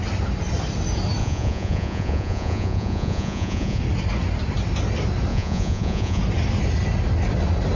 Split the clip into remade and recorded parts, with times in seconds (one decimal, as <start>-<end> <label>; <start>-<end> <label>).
0.0-1.2 recorded; 1.2-3.8 remade; 3.8-5.3 recorded; 5.3-6.2 remade; 6.2-7.8 recorded